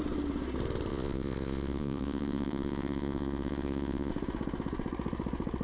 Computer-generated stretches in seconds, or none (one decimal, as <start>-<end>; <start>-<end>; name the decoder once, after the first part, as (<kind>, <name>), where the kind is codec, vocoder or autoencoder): 0.9-4.1 (vocoder, Vocos)